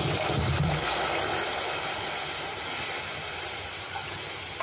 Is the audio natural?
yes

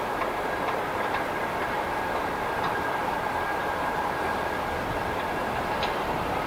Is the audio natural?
yes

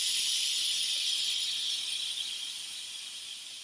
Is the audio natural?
yes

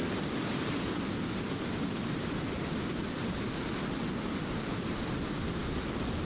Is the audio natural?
yes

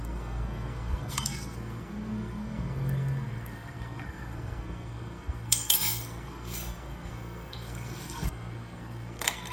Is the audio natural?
no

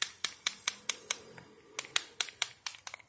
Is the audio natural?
yes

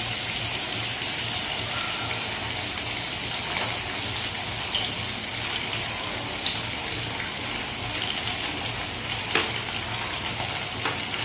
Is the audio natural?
yes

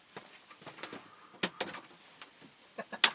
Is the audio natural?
yes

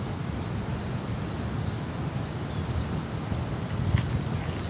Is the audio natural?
yes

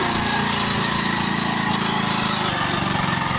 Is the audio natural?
yes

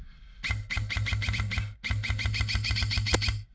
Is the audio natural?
yes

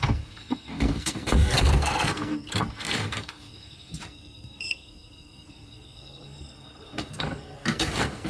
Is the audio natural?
no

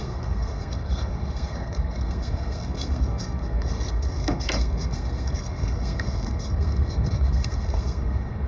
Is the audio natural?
no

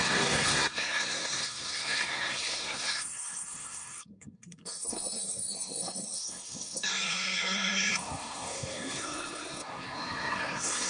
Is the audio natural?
no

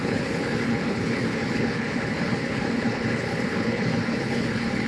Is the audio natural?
no